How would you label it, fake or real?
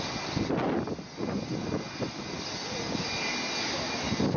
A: real